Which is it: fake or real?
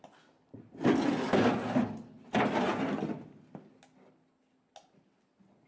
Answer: real